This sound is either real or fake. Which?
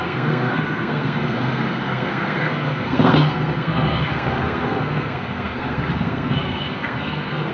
fake